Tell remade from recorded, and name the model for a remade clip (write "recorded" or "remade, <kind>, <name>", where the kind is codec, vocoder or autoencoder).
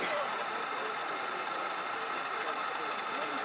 recorded